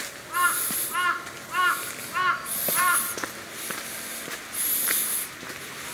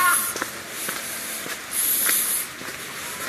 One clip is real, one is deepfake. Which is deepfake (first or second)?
second